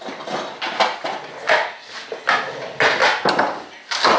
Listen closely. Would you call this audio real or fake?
real